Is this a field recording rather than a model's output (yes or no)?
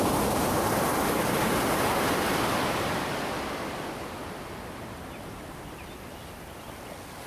yes